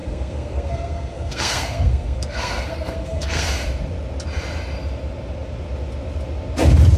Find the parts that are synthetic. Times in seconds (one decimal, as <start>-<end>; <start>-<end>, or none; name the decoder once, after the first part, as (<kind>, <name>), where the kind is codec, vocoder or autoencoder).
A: 0.0-3.5 (codec, SNAC)